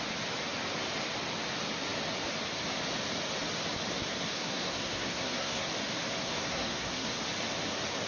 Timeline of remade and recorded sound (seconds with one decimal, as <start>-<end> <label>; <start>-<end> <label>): 0.0-4.3 recorded; 4.3-5.7 remade; 5.7-6.2 recorded; 6.2-7.1 remade; 7.1-8.1 recorded